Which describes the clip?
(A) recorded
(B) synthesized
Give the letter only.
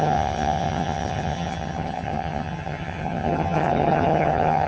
B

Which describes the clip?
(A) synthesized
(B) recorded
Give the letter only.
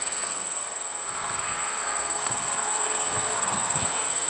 A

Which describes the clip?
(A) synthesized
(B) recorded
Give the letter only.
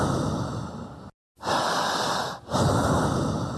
B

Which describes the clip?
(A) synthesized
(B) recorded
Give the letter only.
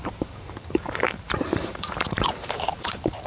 A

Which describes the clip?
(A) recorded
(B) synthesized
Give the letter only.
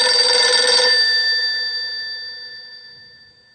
B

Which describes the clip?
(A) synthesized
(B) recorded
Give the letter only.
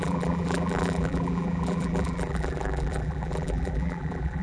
A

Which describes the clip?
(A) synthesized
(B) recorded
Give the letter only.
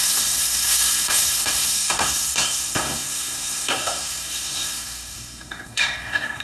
A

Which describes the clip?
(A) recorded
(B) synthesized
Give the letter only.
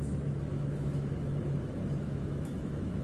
B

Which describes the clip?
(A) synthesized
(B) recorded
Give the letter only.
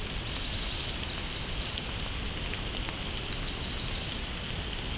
B